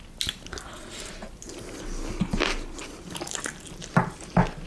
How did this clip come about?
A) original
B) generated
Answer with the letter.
A